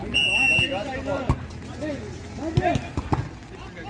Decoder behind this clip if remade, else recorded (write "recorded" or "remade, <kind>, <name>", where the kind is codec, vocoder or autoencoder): recorded